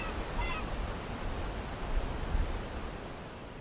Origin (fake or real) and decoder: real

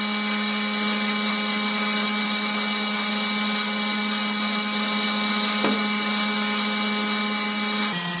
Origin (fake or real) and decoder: real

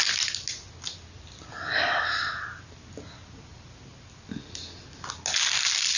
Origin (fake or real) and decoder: real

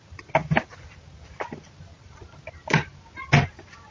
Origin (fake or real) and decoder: real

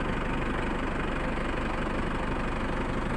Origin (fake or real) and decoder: real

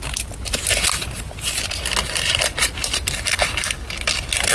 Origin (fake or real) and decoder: real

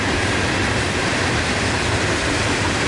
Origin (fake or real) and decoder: fake, vocoder, BigVGAN v2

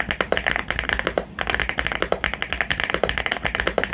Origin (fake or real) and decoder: real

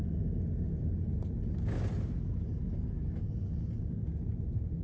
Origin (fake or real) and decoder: real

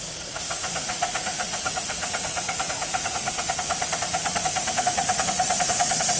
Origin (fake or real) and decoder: fake, vocoder, Vocos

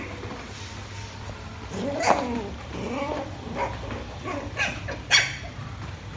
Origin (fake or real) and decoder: fake, vocoder, BigVGAN v2